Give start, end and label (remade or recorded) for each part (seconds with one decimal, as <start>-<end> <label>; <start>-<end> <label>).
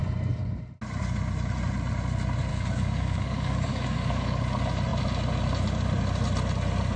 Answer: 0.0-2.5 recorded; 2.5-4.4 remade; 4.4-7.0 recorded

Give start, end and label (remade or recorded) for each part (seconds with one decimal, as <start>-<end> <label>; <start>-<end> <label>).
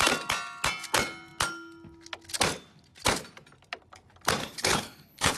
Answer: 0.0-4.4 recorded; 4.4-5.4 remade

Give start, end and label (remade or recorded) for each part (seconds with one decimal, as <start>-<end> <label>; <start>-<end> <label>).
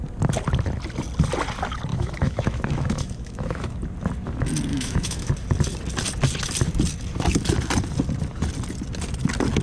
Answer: 0.0-1.9 recorded; 1.9-3.8 remade; 3.8-4.7 recorded; 4.7-5.3 remade; 5.3-9.6 recorded